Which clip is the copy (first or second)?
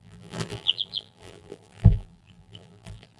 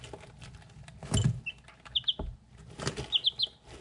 first